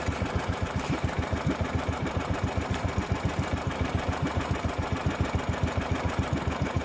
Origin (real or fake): fake